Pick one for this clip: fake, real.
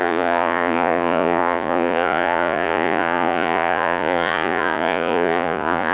fake